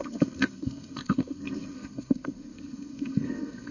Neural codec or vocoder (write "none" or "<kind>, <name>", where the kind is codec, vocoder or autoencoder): codec, SNAC